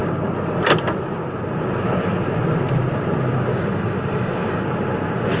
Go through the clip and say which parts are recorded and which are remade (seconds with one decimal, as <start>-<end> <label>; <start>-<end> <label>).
0.0-3.5 recorded; 3.5-4.6 remade; 4.6-5.4 recorded